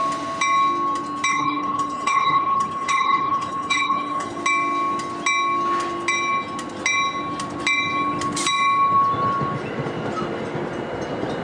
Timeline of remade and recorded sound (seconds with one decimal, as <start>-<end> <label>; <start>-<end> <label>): 0.0-1.3 recorded; 1.3-4.4 remade; 4.4-11.4 recorded